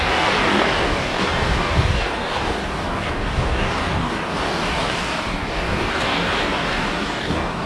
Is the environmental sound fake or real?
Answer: fake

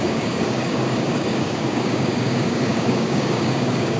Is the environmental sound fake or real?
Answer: fake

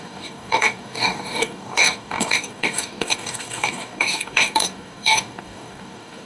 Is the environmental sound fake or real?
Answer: fake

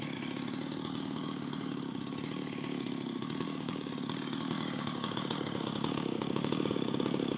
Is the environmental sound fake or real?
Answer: fake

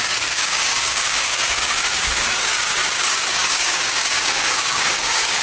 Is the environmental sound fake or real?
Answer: fake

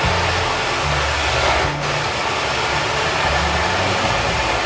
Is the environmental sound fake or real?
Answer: real